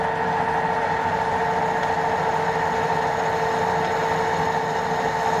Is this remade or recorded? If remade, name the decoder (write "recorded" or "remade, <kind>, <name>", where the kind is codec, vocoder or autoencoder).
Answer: recorded